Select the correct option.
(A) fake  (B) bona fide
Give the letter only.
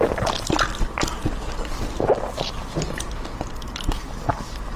B